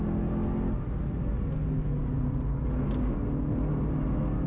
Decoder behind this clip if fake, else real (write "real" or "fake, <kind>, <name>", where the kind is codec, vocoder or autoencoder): real